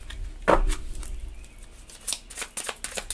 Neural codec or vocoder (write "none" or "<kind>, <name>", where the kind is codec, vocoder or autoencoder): none